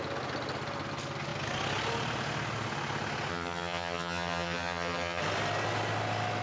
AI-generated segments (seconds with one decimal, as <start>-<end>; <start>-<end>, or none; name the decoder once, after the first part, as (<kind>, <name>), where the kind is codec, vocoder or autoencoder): 3.3-5.2 (vocoder, HiFi-GAN)